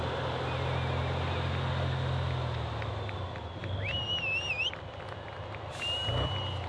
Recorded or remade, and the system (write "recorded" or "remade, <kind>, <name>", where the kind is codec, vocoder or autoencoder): recorded